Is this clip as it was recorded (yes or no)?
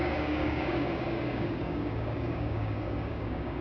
no